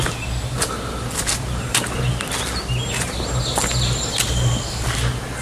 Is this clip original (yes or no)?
yes